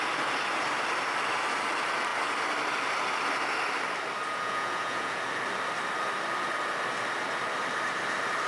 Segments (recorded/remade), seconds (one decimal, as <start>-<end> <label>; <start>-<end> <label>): 0.0-4.3 recorded; 4.3-5.2 remade; 5.2-8.5 recorded